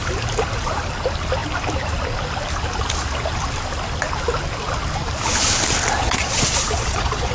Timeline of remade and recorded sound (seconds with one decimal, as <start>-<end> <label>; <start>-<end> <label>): 0.0-6.0 recorded; 6.0-7.3 remade